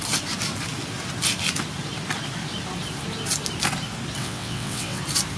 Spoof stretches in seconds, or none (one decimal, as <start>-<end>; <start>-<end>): 4.2-5.0

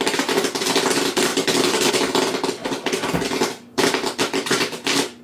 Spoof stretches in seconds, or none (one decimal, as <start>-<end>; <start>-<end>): none

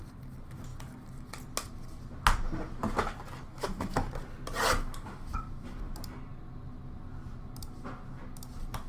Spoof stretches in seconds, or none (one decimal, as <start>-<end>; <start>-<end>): 3.5-4.1

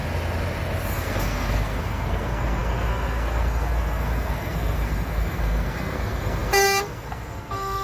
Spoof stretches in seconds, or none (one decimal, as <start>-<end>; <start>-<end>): 0.9-7.8

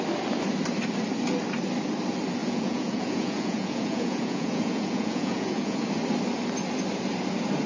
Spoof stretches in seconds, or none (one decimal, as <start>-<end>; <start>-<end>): 2.4-5.9

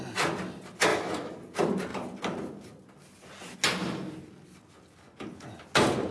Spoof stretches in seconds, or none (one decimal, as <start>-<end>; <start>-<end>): 0.9-1.4